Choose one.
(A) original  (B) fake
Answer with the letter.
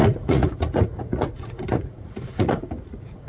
B